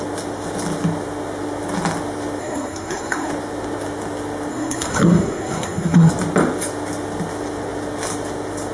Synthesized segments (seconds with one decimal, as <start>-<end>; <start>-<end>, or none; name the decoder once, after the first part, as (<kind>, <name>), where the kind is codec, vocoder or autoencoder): 2.4-3.3 (codec, SNAC); 4.5-6.1